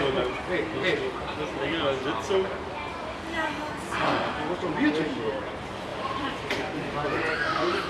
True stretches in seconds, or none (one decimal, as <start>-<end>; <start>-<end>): 0.0-5.9; 6.5-7.9